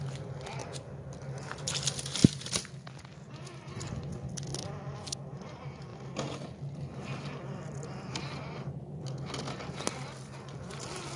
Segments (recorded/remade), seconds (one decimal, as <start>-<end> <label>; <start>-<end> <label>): 0.0-11.2 recorded